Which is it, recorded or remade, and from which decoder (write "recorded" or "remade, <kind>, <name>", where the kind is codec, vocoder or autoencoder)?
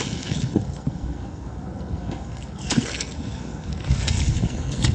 remade, codec, SNAC